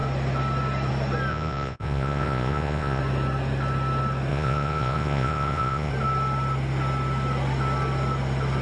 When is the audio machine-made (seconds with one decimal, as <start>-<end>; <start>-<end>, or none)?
1.3-3.0; 4.3-5.9

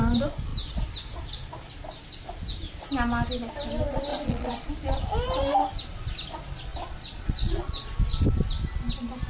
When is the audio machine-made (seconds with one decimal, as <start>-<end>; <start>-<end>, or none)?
4.1-4.7; 6.7-7.9

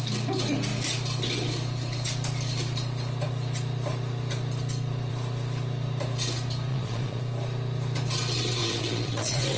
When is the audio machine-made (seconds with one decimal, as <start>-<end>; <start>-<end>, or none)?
6.7-7.2; 8.6-9.6

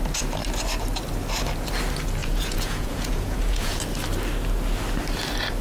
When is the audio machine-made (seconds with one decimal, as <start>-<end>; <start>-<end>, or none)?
2.2-3.8

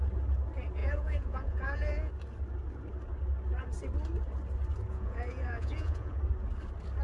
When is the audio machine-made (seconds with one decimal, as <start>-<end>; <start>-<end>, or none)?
0.8-2.1; 4.9-6.2

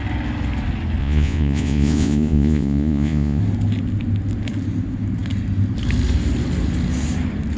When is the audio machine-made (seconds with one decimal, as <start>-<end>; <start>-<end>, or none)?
1.0-3.4

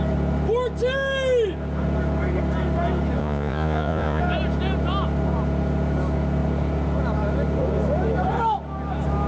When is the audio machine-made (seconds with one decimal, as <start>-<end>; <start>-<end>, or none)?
3.2-4.2

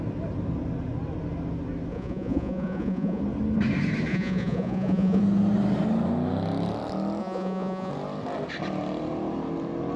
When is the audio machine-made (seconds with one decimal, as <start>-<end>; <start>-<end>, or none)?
1.9-3.2; 4.1-5.2; 7.2-7.9